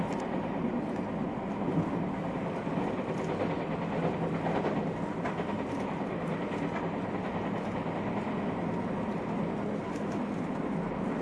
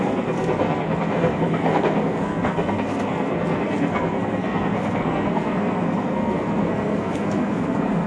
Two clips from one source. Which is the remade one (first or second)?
second